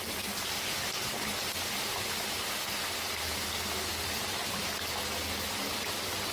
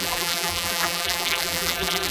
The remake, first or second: second